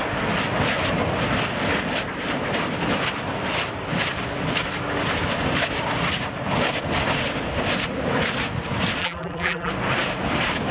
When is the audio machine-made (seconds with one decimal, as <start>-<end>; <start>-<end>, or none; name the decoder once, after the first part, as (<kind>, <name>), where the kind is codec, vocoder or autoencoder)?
9.0-9.7 (vocoder, BigVGAN v2)